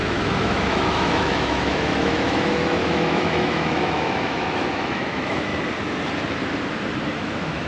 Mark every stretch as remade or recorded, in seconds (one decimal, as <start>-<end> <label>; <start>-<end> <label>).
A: 0.0-5.5 remade; 5.5-7.1 recorded; 7.1-7.7 remade